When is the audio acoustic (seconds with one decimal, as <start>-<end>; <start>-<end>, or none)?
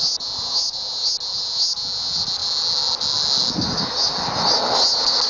0.0-5.3